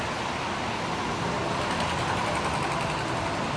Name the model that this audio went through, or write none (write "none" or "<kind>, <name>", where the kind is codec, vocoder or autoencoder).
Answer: none